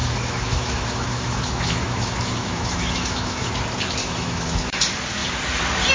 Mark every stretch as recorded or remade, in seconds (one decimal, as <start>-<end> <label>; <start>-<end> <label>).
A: 0.0-3.5 remade; 3.5-4.0 recorded; 4.0-4.8 remade; 4.8-5.9 recorded